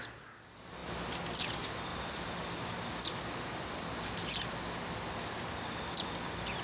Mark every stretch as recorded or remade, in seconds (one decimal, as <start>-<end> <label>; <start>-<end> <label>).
0.0-6.6 recorded